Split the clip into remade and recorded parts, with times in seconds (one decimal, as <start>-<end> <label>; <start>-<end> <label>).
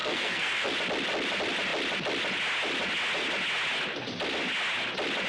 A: 0.0-0.7 remade; 0.7-5.3 recorded